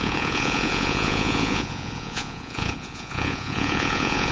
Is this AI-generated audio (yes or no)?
yes